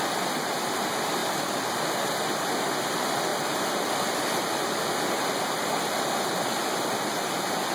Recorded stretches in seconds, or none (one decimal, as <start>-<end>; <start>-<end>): 0.0-1.2; 2.0-3.3; 6.6-7.7